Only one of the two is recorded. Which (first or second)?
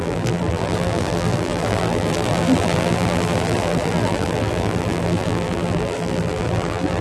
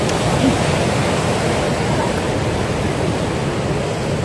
second